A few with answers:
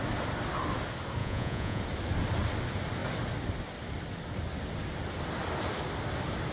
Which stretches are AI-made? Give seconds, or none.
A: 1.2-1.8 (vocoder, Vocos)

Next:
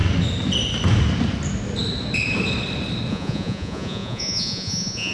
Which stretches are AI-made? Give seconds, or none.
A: 3.1-5.1 (vocoder, Vocos)